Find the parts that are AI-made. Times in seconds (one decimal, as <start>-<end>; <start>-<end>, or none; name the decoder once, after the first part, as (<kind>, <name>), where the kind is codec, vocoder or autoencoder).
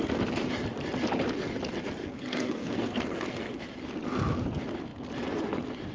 2.0-3.6 (codec, SNAC)